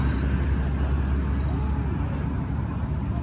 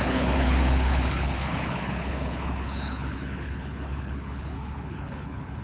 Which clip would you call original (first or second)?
first